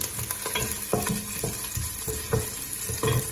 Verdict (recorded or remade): recorded